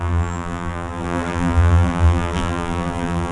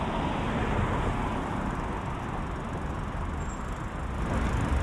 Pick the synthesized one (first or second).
first